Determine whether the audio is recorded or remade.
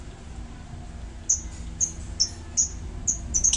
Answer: recorded